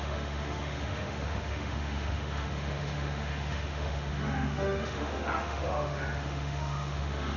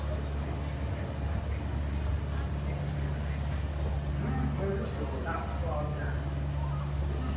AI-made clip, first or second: first